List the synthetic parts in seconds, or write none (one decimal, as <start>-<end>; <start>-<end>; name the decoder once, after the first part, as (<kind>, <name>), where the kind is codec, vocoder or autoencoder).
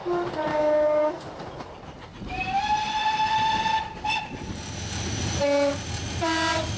0.5-1.1 (codec, DAC)